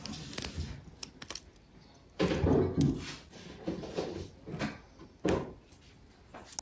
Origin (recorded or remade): recorded